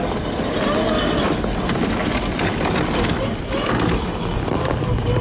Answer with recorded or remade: recorded